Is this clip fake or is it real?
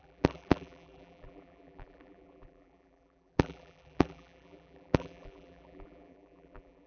fake